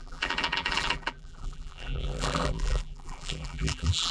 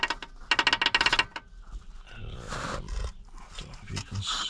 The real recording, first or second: second